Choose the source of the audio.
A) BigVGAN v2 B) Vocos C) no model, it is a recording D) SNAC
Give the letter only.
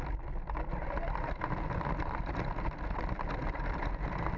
C